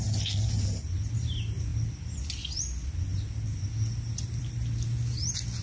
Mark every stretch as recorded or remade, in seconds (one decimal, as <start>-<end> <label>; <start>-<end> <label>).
0.0-5.6 recorded